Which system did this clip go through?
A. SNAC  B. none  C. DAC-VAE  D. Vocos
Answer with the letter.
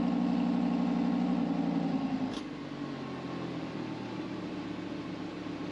B